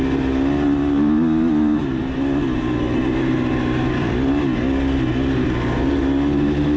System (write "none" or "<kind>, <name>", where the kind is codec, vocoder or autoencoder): none